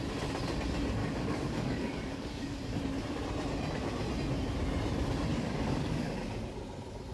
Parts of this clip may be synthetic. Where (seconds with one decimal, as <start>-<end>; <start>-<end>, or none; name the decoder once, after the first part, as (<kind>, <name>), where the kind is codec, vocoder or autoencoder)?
1.0-2.8 (codec, DAC); 5.3-6.1